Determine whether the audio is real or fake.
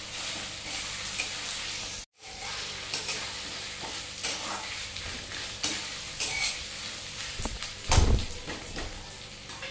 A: real